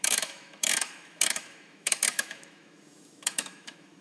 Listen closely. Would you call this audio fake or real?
fake